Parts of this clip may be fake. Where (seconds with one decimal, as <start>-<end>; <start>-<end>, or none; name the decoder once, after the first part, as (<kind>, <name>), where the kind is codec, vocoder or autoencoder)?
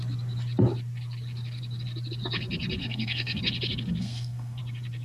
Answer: 2.8-3.4 (codec, SNAC); 4.0-4.6